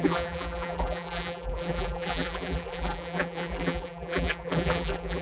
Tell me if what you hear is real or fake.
fake